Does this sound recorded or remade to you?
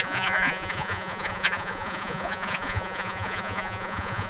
remade